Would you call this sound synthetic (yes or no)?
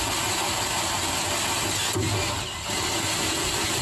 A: no